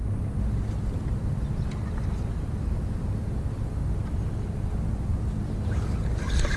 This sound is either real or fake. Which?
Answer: real